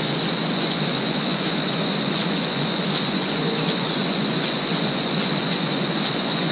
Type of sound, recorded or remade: remade